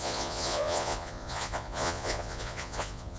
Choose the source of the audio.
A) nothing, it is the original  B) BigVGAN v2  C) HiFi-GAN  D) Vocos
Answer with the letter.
D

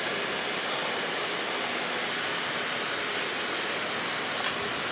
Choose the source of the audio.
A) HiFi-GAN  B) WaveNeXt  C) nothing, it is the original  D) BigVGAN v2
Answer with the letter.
C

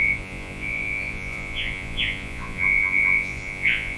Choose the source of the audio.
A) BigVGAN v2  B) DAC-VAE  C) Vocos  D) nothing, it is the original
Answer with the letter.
C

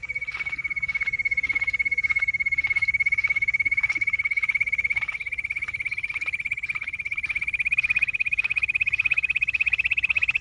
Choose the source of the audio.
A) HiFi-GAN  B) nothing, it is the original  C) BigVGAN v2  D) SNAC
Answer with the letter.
C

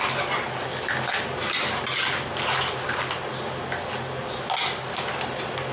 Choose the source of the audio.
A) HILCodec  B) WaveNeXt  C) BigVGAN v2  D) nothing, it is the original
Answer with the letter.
D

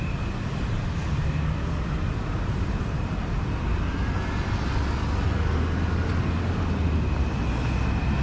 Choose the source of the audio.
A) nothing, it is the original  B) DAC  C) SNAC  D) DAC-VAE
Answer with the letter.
A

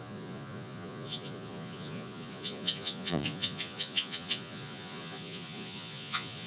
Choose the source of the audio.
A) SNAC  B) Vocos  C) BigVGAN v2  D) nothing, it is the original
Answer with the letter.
B